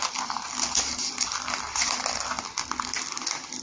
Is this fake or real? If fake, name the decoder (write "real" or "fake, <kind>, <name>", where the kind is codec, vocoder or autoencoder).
real